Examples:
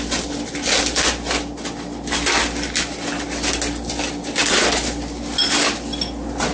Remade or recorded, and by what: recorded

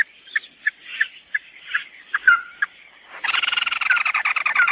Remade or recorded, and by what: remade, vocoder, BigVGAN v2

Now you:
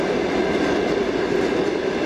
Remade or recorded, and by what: recorded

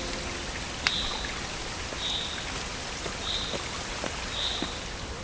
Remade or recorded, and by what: recorded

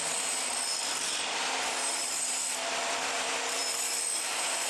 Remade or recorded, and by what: remade, vocoder, BigVGAN v2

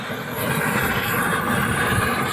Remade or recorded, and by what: recorded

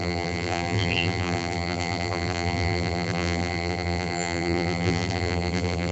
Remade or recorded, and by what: remade, vocoder, BigVGAN v2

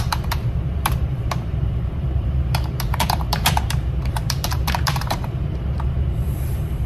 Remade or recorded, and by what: remade, vocoder, BigVGAN v2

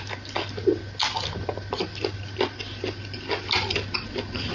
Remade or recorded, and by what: recorded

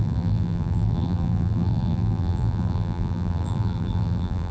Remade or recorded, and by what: remade, vocoder, BigVGAN v2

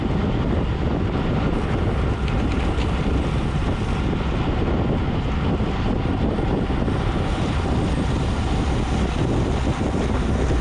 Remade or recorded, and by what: remade, vocoder, BigVGAN v2